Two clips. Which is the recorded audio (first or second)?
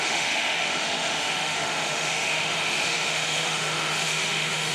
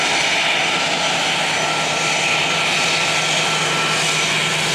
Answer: second